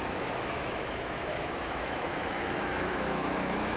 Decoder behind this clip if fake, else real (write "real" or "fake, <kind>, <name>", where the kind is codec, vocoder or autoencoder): fake, autoencoder, DAC-VAE